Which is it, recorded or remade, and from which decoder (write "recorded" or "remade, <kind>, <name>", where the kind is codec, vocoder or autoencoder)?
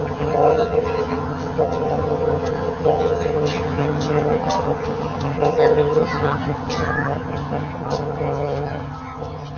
remade, vocoder, HiFi-GAN